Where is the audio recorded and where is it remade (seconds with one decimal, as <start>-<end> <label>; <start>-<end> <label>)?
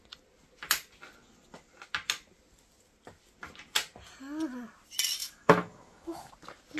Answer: 0.0-5.2 recorded; 5.2-6.3 remade; 6.3-6.8 recorded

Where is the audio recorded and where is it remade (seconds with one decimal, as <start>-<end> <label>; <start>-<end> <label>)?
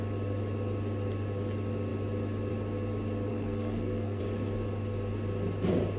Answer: 0.0-3.3 recorded; 3.3-4.2 remade; 4.2-6.0 recorded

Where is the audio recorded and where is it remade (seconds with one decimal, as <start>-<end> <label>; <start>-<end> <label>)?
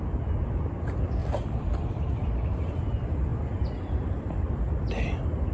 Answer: 0.0-1.2 recorded; 1.2-2.5 remade; 2.5-3.3 recorded; 3.3-4.8 remade; 4.8-5.5 recorded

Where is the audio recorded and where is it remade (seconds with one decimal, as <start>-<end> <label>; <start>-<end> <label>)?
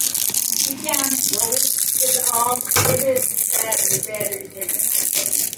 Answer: 0.0-5.6 recorded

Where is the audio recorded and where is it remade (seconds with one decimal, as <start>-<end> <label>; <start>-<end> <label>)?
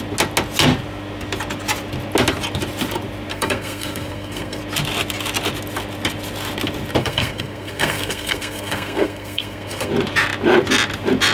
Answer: 0.0-3.3 recorded; 3.3-4.6 remade; 4.6-7.0 recorded; 7.0-9.9 remade; 9.9-11.3 recorded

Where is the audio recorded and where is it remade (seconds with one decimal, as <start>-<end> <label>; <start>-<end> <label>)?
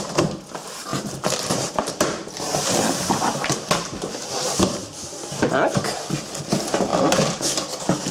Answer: 0.0-0.9 recorded; 0.9-2.3 remade; 2.3-6.9 recorded; 6.9-7.4 remade; 7.4-8.1 recorded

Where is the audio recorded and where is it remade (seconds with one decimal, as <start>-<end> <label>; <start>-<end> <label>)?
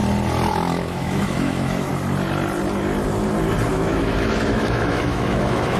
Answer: 0.0-0.5 recorded; 0.5-1.9 remade; 1.9-3.7 recorded; 3.7-5.8 remade